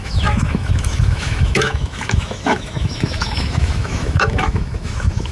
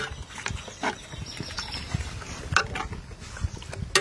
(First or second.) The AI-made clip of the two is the first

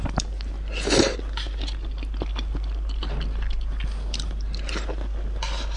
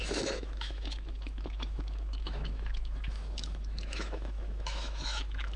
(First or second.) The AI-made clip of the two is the second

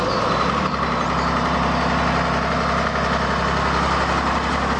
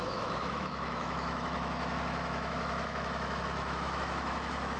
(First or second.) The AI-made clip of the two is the second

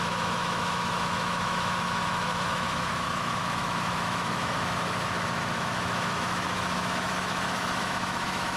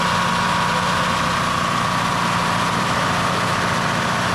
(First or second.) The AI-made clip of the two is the first